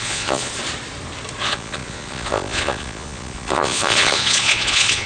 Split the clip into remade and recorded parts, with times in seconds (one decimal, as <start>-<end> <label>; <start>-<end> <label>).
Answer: 0.0-0.5 remade; 0.5-1.4 recorded; 1.4-5.1 remade